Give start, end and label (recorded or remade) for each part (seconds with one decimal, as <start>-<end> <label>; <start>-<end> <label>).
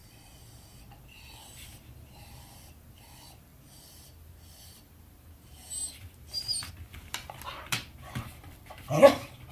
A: 0.0-9.5 recorded